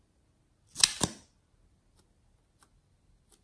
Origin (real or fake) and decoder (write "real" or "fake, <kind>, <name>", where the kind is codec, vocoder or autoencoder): real